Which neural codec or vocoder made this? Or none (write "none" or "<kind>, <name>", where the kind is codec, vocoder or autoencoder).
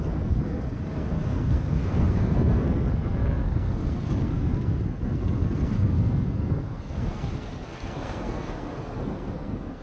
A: codec, SNAC